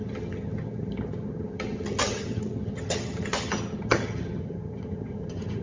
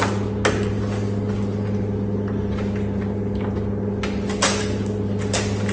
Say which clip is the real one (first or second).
second